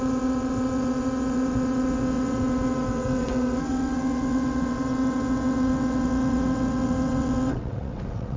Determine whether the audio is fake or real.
fake